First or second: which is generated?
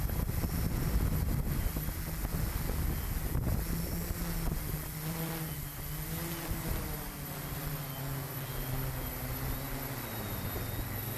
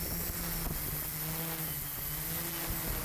first